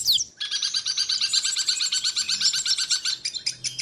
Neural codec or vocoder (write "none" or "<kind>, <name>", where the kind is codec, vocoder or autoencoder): none